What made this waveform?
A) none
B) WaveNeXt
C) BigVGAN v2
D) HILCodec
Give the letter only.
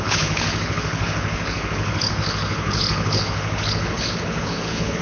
D